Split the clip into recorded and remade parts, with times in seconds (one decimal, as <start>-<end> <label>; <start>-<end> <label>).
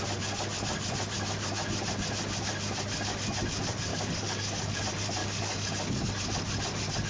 0.0-3.9 recorded; 3.9-4.8 remade; 4.8-5.2 recorded; 5.2-6.1 remade; 6.1-7.1 recorded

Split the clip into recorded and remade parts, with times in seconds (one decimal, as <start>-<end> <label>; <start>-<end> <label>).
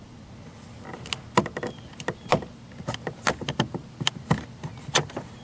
0.0-5.4 recorded